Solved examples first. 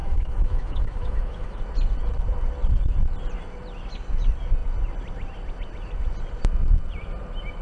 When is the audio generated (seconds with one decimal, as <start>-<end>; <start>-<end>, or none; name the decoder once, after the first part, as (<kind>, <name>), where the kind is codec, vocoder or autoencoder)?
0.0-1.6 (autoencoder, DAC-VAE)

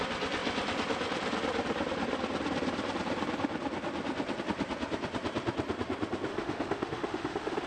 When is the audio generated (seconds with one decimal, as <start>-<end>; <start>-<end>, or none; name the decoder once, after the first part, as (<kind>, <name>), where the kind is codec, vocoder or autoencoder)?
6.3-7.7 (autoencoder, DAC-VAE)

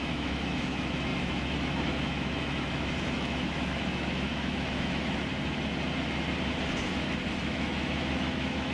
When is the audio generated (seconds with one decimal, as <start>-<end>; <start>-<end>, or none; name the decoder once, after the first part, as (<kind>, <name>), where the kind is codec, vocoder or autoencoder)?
0.0-5.3 (autoencoder, DAC-VAE); 7.4-8.7

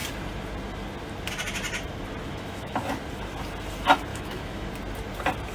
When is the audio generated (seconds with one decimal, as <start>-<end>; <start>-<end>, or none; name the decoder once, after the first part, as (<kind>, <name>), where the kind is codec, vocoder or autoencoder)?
2.3-2.8 (autoencoder, DAC-VAE); 4.1-4.7